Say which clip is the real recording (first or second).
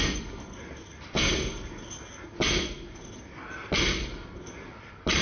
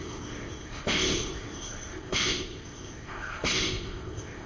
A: first